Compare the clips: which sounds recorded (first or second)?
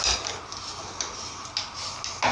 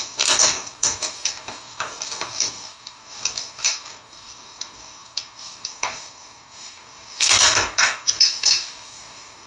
first